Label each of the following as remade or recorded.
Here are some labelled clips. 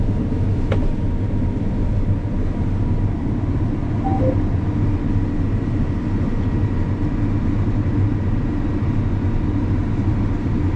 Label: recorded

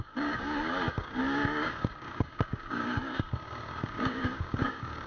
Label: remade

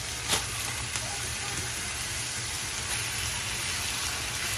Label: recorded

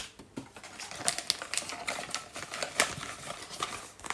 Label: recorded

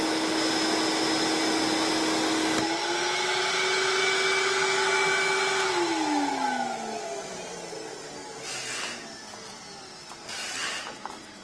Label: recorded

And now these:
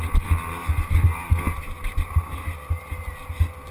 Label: recorded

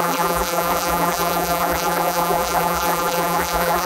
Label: remade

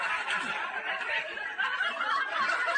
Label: recorded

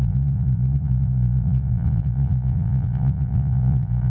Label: remade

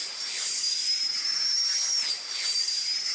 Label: recorded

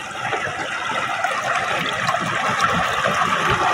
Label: recorded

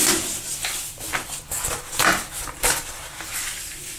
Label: recorded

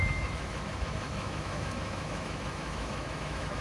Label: remade